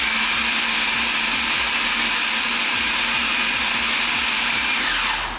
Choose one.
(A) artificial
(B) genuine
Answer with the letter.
B